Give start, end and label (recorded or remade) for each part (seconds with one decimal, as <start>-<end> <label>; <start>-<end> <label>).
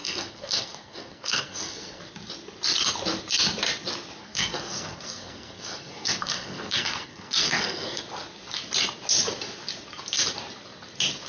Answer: 0.0-2.0 remade; 2.0-4.2 recorded; 4.2-8.0 remade; 8.0-11.3 recorded